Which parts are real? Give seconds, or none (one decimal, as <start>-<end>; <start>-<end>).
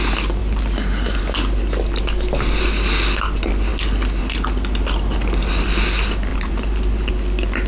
0.0-0.4; 1.2-6.3; 7.1-7.7